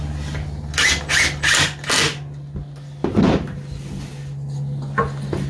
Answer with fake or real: real